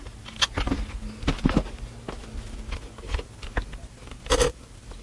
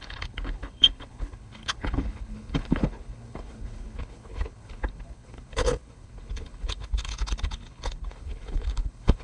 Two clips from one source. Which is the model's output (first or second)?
second